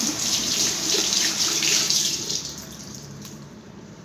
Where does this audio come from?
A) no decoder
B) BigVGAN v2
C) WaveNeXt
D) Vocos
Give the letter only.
B